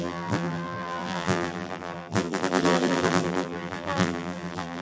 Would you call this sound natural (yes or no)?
no